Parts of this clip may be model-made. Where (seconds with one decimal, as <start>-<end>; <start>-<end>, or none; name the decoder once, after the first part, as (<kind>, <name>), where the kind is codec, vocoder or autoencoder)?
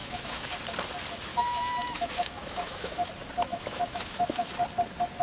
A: 0.0-0.5 (autoencoder, DAC-VAE); 1.3-3.1; 3.5-4.5